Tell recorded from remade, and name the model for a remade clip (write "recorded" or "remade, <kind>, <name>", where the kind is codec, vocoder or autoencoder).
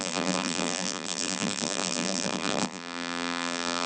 remade, vocoder, BigVGAN v2